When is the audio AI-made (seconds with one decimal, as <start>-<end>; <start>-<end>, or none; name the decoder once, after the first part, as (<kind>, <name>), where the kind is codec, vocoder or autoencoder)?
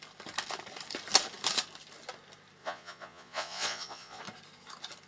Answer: 2.6-4.2 (vocoder, Vocos)